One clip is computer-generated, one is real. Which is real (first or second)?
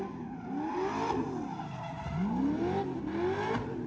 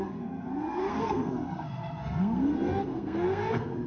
first